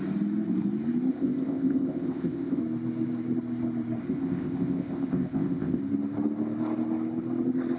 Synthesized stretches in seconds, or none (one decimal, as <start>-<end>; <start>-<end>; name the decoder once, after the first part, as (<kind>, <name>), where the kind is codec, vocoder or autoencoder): 1.1-2.6 (codec, ZipCodec); 4.0-5.8